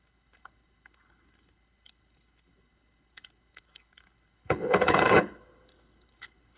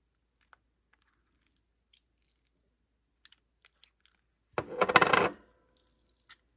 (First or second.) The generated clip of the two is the first